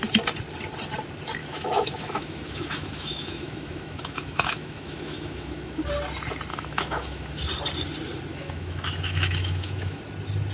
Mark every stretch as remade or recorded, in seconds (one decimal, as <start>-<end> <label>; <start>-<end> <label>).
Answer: 0.0-1.4 recorded; 1.4-5.8 remade; 5.8-6.5 recorded; 6.5-7.4 remade; 7.4-8.3 recorded; 8.3-10.0 remade; 10.0-10.5 recorded

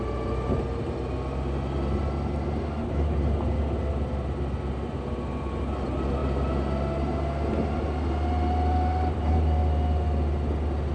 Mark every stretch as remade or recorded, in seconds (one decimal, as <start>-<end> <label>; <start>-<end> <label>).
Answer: 0.0-10.9 recorded

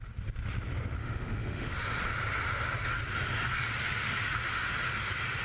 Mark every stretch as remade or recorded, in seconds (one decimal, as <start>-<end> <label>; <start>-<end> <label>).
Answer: 0.0-1.0 recorded; 1.0-1.7 remade; 1.7-5.4 recorded

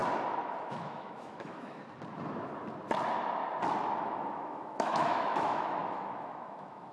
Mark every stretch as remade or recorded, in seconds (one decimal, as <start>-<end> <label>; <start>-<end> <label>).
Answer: 0.0-0.6 recorded; 0.6-1.8 remade; 1.8-4.0 recorded; 4.0-6.9 remade

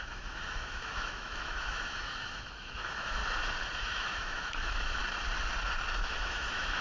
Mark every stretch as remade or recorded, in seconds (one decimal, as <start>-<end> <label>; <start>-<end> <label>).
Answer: 0.0-3.2 remade; 3.2-3.8 recorded; 3.8-5.0 remade; 5.0-6.0 recorded; 6.0-6.8 remade

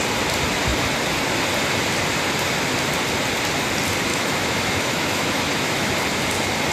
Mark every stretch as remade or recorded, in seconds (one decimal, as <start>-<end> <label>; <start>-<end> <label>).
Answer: 0.0-4.1 recorded; 4.1-5.9 remade; 5.9-6.7 recorded